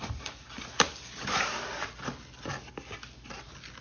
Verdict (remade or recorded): recorded